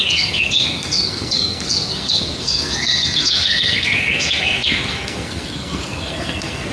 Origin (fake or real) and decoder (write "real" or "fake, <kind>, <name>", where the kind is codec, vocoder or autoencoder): fake, codec, SNAC